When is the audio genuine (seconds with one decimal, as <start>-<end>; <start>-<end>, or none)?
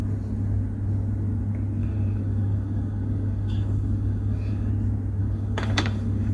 0.0-1.8; 4.7-5.2